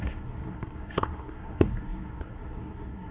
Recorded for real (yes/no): no